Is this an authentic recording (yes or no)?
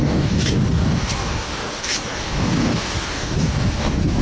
no